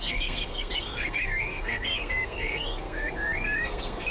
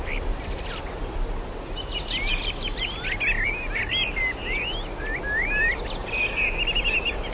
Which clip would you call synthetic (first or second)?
first